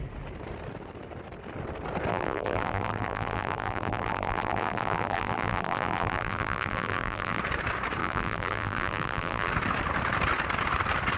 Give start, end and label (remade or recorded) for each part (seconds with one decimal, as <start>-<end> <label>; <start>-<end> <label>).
0.0-2.1 recorded; 2.1-7.4 remade; 7.4-8.0 recorded; 8.0-9.5 remade; 9.5-11.2 recorded